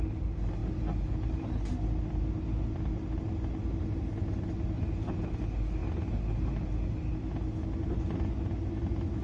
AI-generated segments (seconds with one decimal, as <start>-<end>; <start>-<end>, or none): none